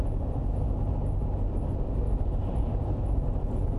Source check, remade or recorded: recorded